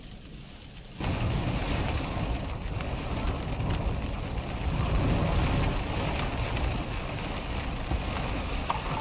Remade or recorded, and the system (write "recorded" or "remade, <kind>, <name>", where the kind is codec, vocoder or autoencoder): recorded